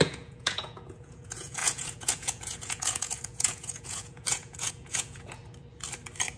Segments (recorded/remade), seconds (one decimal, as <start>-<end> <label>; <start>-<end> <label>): 0.0-5.4 remade; 5.4-6.4 recorded